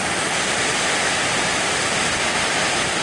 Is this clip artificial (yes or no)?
yes